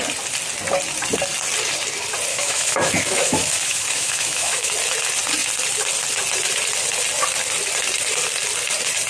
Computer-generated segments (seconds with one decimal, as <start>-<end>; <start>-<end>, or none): 2.3-4.7